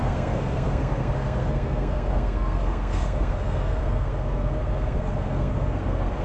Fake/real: fake